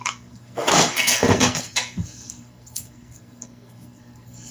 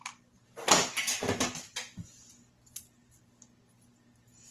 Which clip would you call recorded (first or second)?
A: second